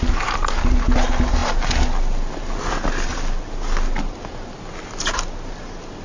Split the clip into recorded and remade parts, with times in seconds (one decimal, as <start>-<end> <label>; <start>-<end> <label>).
0.0-6.0 recorded